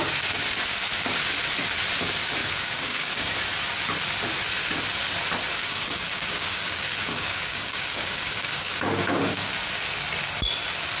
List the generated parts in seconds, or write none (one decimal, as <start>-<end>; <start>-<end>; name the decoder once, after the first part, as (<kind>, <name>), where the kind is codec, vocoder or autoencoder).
2.4-3.3 (codec, DAC); 5.6-9.5